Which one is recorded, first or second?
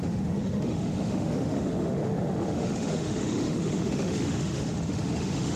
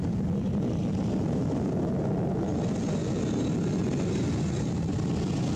second